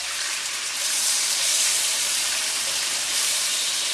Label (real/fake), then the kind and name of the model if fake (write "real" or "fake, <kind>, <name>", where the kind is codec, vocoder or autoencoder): fake, vocoder, BigVGAN v2